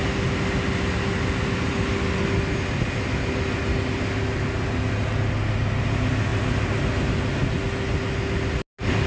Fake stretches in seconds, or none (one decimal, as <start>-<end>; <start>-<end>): none